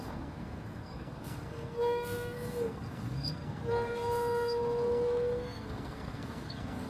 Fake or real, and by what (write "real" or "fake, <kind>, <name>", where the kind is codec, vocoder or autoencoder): fake, codec, SNAC